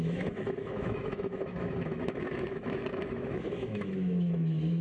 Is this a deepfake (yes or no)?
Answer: yes